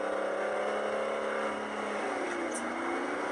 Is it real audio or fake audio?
real